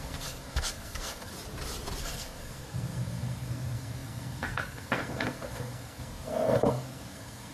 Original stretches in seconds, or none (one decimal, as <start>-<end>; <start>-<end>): 1.3-2.0